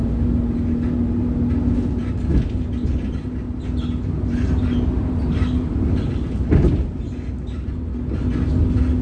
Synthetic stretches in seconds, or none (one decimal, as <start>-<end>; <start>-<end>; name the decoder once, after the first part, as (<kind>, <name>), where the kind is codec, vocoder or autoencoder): none